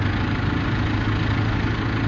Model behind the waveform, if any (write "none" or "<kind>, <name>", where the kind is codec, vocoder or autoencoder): none